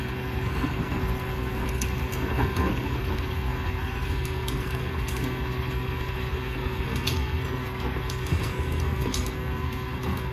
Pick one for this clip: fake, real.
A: fake